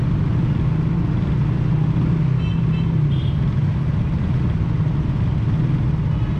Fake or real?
real